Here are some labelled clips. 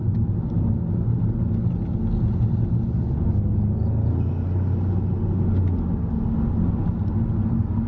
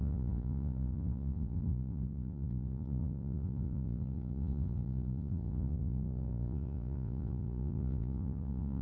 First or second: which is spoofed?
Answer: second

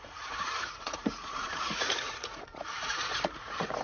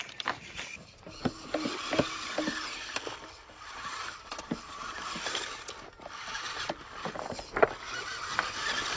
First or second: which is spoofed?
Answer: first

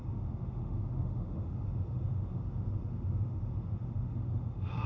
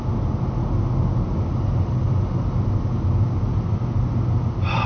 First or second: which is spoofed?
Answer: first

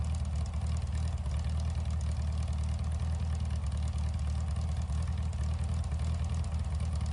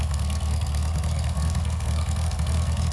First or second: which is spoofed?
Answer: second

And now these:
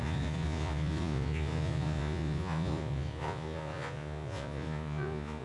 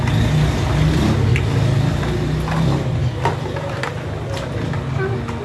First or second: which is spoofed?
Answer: first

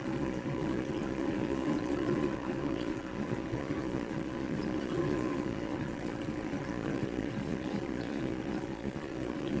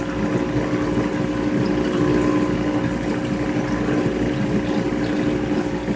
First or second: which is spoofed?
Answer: first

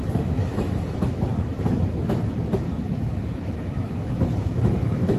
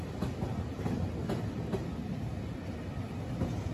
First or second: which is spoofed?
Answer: first